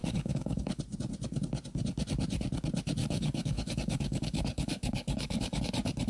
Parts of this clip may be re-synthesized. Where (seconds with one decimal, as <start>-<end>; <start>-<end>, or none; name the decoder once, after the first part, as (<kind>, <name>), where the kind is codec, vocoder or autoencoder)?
0.0-0.8 (codec, DAC); 3.0-5.6